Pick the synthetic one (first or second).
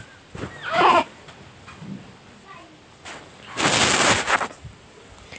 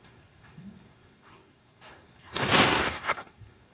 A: second